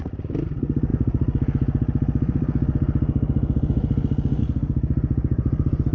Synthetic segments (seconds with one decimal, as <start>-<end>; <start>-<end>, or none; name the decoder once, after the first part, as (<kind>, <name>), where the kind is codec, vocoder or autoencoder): none